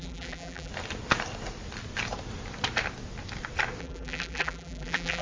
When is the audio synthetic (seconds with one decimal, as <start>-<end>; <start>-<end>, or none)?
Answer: 0.0-0.7; 3.8-5.2